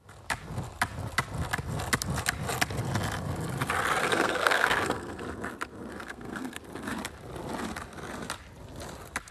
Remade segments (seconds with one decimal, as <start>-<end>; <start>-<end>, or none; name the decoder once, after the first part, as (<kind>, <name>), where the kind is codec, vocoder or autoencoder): 4.0-5.2 (codec, SNAC); 5.9-6.6